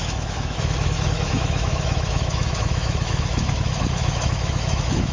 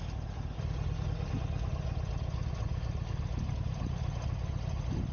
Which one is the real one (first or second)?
second